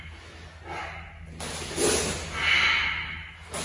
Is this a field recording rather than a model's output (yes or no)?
yes